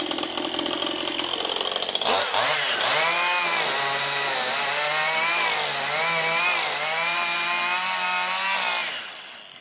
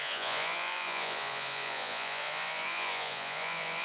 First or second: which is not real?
second